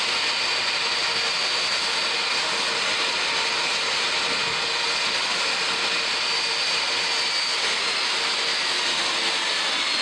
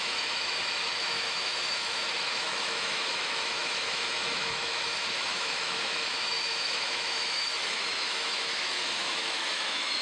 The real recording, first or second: first